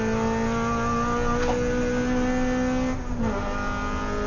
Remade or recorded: recorded